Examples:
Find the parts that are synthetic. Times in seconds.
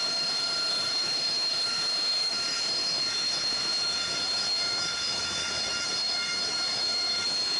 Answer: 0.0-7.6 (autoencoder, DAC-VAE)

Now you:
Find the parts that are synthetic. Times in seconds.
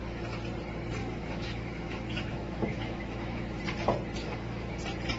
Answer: 1.0-3.6 (autoencoder, DAC-VAE); 4.2-4.8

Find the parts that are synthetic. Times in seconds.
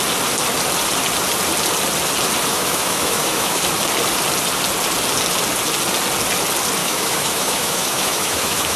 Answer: 2.5-3.6 (autoencoder, DAC-VAE); 6.8-8.8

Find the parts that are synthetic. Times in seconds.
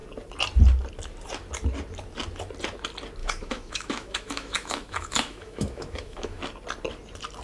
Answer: 3.2-6.4 (autoencoder, DAC-VAE)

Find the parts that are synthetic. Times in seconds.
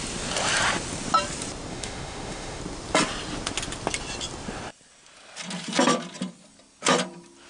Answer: 1.7-2.6 (autoencoder, DAC-VAE)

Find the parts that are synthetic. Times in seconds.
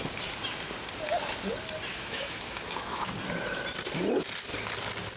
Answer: 1.9-3.1 (autoencoder, DAC-VAE)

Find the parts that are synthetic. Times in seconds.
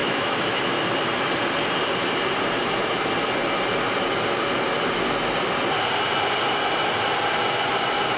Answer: 0.0-0.6 (autoencoder, DAC-VAE)